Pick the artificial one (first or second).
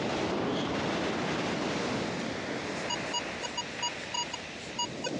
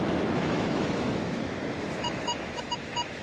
second